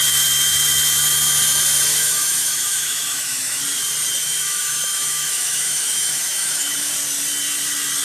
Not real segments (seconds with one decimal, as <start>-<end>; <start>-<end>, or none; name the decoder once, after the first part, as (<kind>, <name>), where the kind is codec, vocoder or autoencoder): 1.9-3.6 (autoencoder, DAC-VAE); 4.2-6.9